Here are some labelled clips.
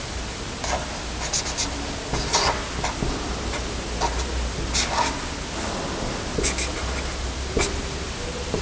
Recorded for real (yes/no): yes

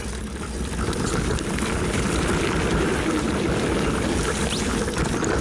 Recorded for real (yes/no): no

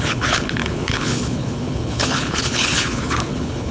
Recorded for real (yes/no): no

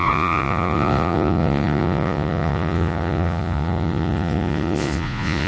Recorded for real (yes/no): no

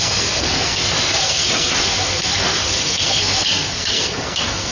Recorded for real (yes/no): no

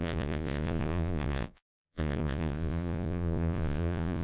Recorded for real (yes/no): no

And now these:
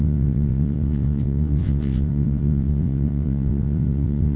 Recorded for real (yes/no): no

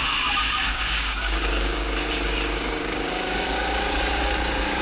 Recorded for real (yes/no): no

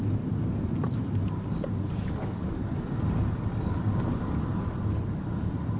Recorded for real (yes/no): yes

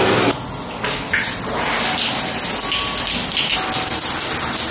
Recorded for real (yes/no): yes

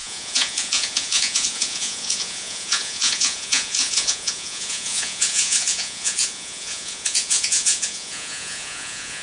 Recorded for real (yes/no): no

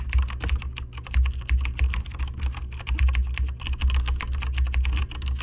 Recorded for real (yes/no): yes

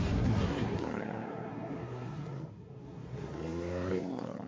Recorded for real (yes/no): no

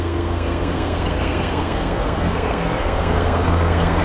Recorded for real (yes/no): no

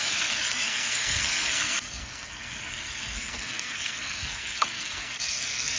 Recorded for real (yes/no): no